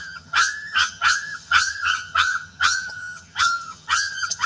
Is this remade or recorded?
remade